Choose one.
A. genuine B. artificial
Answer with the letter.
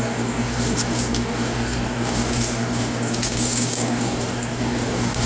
B